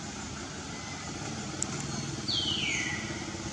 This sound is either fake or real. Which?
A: real